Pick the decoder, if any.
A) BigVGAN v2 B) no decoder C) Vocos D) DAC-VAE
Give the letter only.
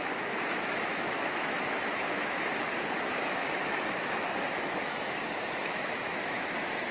D